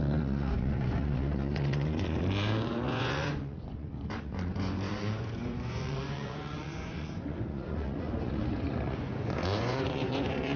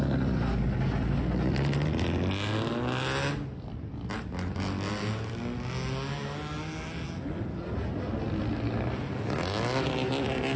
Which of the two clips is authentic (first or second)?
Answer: second